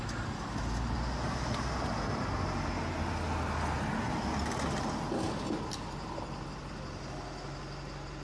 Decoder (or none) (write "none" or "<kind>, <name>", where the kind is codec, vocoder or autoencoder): none